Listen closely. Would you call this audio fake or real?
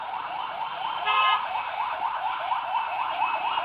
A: fake